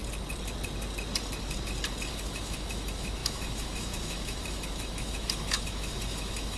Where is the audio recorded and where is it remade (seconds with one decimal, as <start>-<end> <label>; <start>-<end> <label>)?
0.0-2.1 recorded; 2.1-6.6 remade